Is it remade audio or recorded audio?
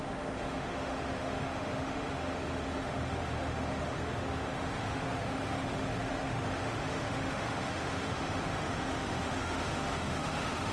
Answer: remade